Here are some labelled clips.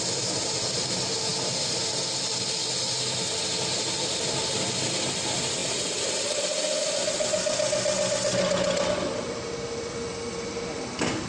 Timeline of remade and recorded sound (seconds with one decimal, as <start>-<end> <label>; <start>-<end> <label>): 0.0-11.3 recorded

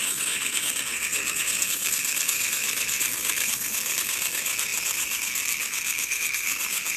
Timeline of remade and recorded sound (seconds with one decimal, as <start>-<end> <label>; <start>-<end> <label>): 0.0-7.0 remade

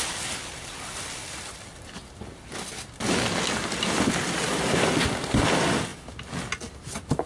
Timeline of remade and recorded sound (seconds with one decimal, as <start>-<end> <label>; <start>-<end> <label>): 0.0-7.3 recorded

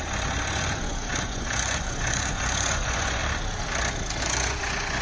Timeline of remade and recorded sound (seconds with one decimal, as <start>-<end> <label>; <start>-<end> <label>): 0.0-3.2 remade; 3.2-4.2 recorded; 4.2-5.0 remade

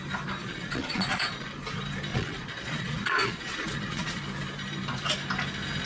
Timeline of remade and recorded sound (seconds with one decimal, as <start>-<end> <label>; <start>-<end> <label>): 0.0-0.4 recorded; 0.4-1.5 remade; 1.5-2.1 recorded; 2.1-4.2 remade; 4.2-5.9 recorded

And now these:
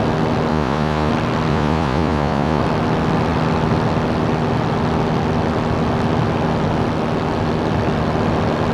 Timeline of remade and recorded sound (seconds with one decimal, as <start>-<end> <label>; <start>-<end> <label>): 0.0-0.5 recorded; 0.5-1.1 remade; 1.1-1.5 recorded; 1.5-2.6 remade; 2.6-8.7 recorded

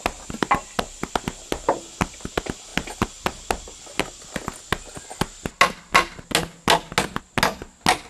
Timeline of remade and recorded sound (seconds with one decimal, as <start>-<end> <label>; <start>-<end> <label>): 0.0-8.1 recorded

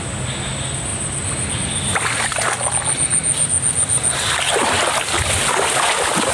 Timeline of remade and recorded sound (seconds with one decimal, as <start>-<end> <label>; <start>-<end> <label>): 0.0-6.3 recorded